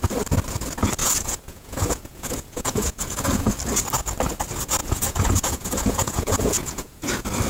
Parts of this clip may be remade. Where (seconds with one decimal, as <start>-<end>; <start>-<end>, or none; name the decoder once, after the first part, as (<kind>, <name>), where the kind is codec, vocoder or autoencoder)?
1.0-3.5 (vocoder, Vocos); 4.8-7.1